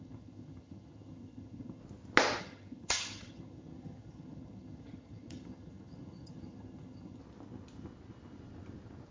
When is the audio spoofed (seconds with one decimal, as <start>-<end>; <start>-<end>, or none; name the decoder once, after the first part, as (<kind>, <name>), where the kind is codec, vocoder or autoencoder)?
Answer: 0.0-1.8 (vocoder, HiFi-GAN); 2.4-7.2